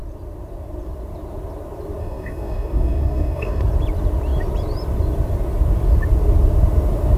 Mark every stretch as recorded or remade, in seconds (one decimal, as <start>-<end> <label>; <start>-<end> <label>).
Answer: 0.0-2.0 recorded; 2.0-3.6 remade; 3.6-7.2 recorded